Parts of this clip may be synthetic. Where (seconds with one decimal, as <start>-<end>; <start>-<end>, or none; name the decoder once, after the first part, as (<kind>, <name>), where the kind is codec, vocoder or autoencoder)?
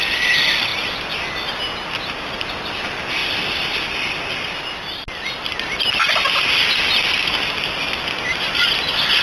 0.0-0.7 (vocoder, BigVGAN v2); 2.1-3.2; 8.3-9.2